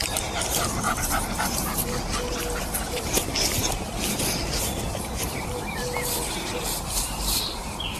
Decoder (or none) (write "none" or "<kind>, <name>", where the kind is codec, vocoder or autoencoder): vocoder, BigVGAN v2